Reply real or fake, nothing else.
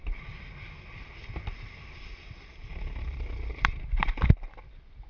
real